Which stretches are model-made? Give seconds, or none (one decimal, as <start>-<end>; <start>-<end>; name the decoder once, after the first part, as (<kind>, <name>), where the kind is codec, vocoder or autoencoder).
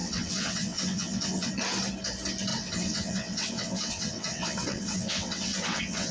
0.0-1.5 (vocoder, WaveNeXt); 2.5-6.1